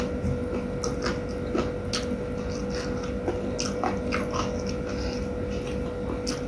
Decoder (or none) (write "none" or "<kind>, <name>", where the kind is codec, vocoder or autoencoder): none